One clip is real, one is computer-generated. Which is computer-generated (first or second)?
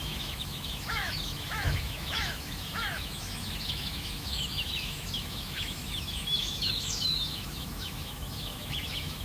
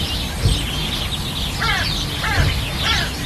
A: first